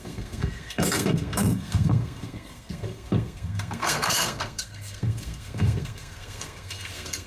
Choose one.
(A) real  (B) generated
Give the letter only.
B